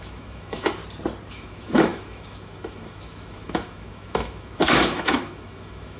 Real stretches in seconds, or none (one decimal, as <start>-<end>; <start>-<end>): 0.8-1.3